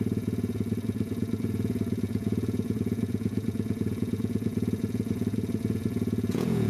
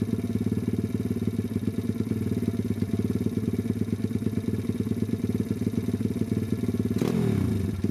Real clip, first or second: second